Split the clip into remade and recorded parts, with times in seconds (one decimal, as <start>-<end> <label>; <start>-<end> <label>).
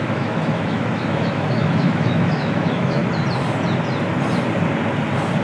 0.0-3.0 remade; 3.0-5.4 recorded